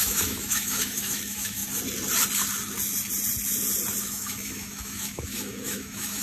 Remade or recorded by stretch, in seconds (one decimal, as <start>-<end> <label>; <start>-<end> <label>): 0.0-1.6 remade; 1.6-4.0 recorded; 4.0-6.2 remade